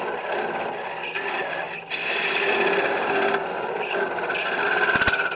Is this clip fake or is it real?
real